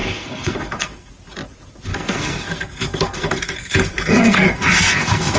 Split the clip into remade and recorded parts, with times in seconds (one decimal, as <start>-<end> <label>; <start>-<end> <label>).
0.0-1.1 remade; 1.1-1.9 recorded; 1.9-5.4 remade